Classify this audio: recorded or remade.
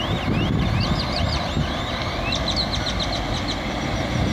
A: recorded